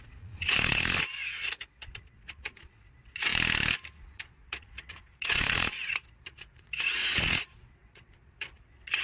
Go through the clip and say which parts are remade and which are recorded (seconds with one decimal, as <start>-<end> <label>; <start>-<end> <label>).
0.0-3.3 remade; 3.3-4.0 recorded; 4.0-9.0 remade